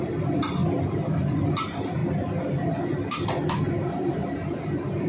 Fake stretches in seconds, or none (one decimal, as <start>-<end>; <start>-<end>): 0.0-0.6; 1.1-2.0